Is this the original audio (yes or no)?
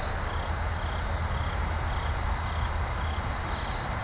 yes